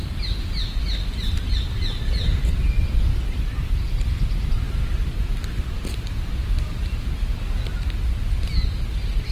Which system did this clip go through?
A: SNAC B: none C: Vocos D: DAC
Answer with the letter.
B